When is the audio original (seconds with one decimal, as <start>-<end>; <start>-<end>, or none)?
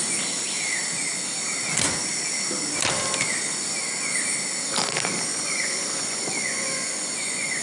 0.0-5.3